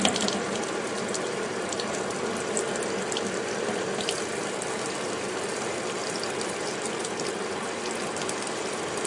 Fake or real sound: real